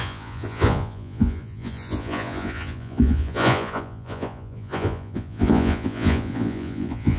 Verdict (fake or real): fake